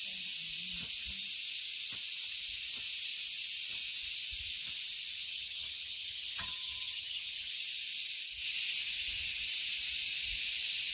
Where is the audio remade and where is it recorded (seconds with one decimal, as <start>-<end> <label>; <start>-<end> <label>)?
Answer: 0.0-5.2 recorded; 5.2-7.5 remade; 7.5-10.9 recorded